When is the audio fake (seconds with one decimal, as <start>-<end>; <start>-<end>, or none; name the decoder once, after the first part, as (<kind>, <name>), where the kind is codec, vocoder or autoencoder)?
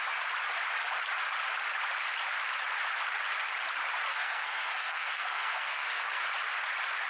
4.1-6.2 (codec, SNAC)